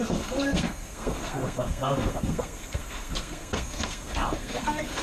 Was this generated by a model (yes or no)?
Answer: yes